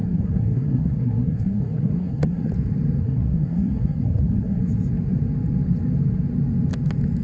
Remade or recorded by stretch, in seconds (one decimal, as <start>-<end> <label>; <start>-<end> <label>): 0.0-2.5 remade; 2.5-3.0 recorded; 3.0-4.6 remade; 4.6-7.2 recorded